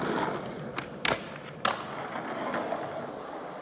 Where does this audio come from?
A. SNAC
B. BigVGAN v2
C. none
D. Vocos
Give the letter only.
C